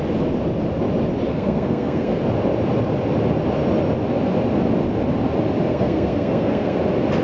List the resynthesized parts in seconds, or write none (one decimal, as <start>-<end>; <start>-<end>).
1.3-2.2; 5.7-6.8